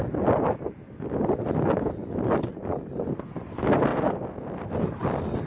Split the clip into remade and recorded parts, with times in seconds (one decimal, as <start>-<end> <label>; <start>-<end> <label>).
0.0-2.0 recorded; 2.0-2.8 remade; 2.8-3.9 recorded; 3.9-4.4 remade; 4.4-5.5 recorded